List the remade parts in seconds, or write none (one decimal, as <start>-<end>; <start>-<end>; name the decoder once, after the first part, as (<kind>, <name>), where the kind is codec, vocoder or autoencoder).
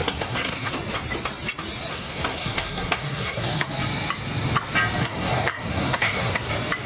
0.0-0.7 (codec, SNAC); 1.9-3.7; 5.0-6.5